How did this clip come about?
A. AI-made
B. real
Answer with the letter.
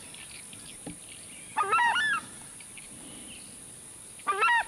B